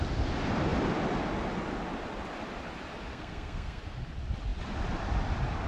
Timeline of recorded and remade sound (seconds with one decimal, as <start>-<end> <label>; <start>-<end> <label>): 0.0-3.1 recorded; 3.1-3.8 remade; 3.8-5.7 recorded